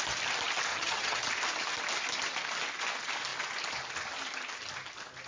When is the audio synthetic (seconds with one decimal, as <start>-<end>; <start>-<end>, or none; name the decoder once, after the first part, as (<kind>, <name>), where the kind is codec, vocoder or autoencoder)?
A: 0.7-1.2 (vocoder, HiFi-GAN)